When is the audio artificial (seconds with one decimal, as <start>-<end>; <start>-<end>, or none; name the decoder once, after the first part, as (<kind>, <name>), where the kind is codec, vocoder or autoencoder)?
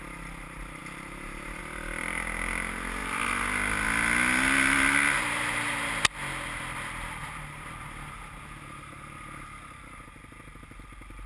0.8-1.6 (vocoder, BigVGAN v2)